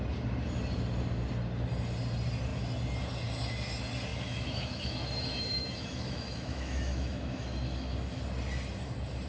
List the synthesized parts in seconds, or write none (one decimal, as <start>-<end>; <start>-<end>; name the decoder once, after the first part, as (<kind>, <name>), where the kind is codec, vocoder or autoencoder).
4.1-8.2 (autoencoder, DAC-VAE)